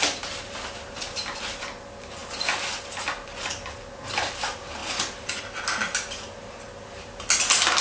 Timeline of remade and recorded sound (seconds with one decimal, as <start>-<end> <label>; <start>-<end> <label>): 0.0-7.8 recorded